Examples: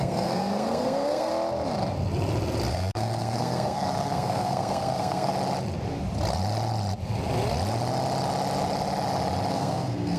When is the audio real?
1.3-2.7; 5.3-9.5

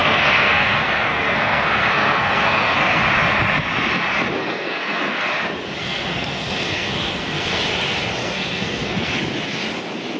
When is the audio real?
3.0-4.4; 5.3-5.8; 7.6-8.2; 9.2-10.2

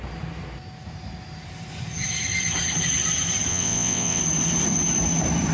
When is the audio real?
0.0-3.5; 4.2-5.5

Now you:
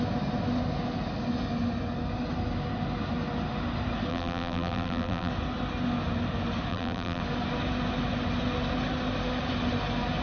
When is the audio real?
0.0-4.1; 5.3-6.7; 7.2-10.2

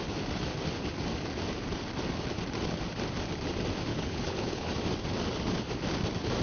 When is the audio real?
0.0-3.9; 4.7-6.4